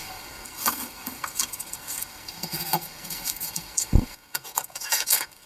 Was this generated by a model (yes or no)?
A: yes